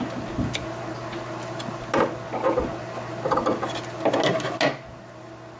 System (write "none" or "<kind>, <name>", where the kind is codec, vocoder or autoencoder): none